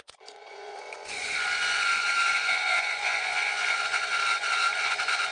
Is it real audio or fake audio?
fake